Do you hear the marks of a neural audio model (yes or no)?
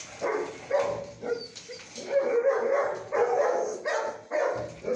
no